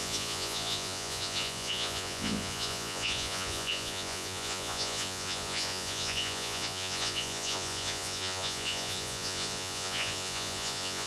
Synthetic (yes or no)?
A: yes